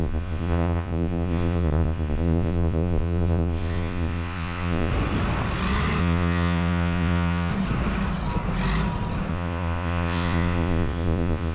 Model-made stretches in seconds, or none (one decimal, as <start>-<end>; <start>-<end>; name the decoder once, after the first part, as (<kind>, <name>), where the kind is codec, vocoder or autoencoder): 0.0-4.9 (vocoder, Vocos); 6.0-7.5; 9.3-11.5